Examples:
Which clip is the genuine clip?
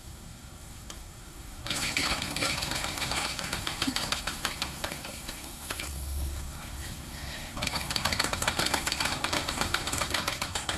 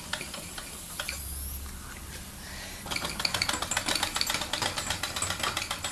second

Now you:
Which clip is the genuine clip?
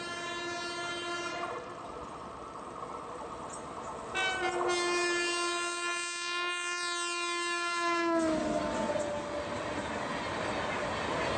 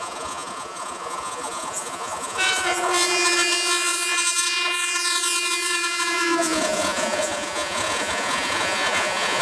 first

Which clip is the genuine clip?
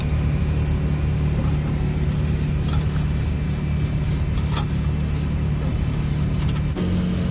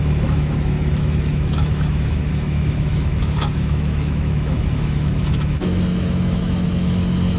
first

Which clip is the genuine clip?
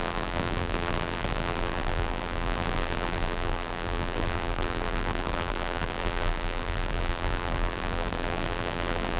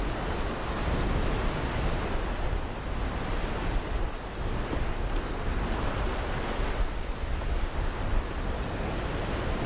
second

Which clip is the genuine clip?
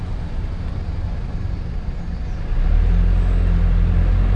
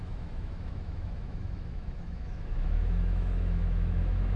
first